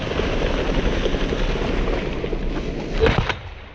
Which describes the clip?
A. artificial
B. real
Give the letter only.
B